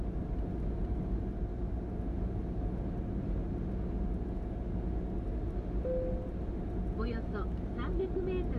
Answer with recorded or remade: recorded